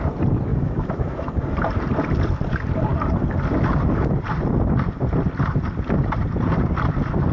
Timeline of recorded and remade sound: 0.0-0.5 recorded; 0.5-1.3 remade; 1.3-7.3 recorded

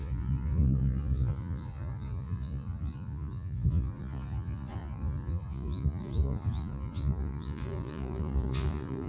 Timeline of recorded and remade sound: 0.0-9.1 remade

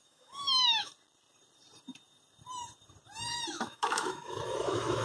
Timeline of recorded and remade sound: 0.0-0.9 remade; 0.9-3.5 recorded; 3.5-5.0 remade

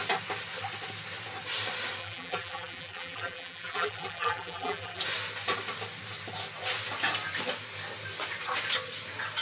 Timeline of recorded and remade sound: 0.0-2.0 recorded; 2.0-5.0 remade; 5.0-9.4 recorded

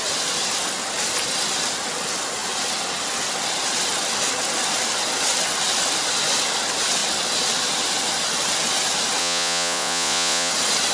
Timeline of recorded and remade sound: 0.0-9.2 recorded; 9.2-10.5 remade; 10.5-10.9 recorded

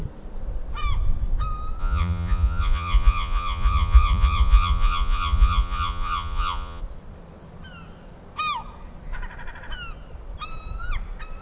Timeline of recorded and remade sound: 0.0-1.8 recorded; 1.8-6.8 remade; 6.8-11.4 recorded